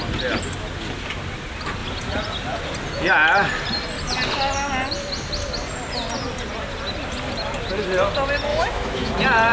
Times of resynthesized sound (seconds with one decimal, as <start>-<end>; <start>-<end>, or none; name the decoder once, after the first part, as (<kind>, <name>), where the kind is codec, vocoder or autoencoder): 8.5-9.1 (autoencoder, DAC-VAE)